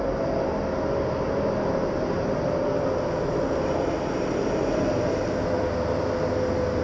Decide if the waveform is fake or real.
real